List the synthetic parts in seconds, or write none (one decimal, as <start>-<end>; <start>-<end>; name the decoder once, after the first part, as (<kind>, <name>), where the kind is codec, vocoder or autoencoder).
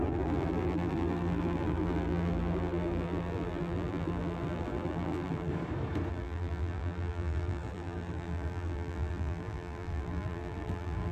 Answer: 0.0-5.5 (vocoder, BigVGAN v2); 6.1-11.1